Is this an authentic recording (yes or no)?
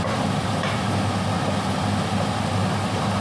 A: yes